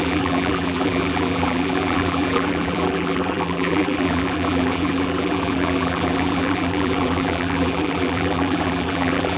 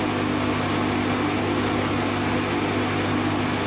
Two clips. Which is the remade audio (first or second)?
first